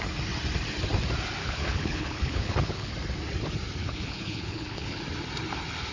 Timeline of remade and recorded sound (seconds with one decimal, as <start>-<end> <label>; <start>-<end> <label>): 0.0-1.4 recorded; 1.4-2.9 remade; 2.9-3.8 recorded; 3.8-5.0 remade; 5.0-5.9 recorded